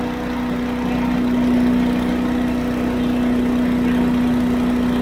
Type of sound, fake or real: real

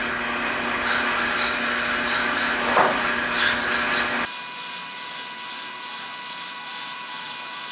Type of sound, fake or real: real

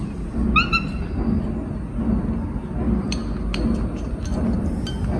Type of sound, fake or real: real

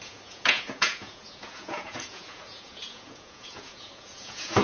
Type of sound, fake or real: fake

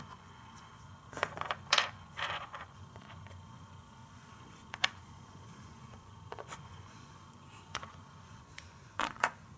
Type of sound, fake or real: fake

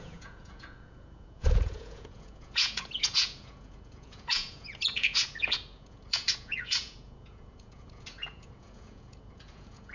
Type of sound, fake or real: fake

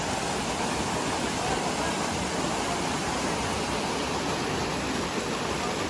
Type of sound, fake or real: real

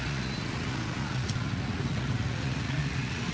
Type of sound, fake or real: fake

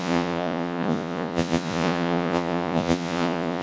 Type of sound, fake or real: fake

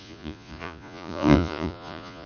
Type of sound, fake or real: fake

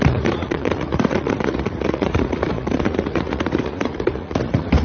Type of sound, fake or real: fake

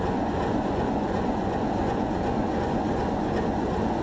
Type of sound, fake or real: fake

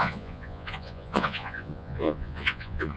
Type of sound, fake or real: fake